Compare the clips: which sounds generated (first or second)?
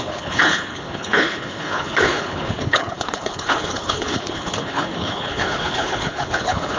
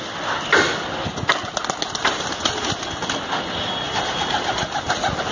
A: first